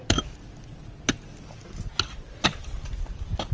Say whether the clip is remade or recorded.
recorded